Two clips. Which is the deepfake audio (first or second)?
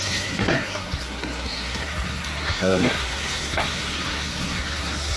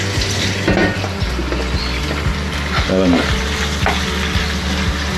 first